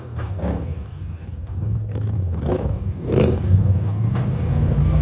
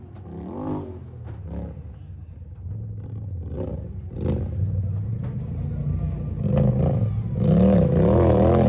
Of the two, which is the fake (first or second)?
first